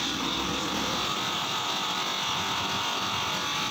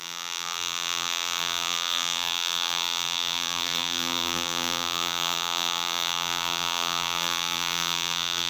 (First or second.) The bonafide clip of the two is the first